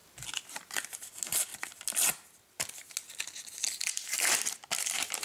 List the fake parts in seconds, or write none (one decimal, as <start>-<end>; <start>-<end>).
none